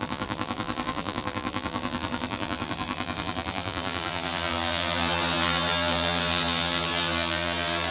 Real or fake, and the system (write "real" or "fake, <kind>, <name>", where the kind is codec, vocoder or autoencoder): fake, vocoder, BigVGAN v2